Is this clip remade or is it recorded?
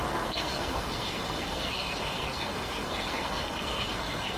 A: remade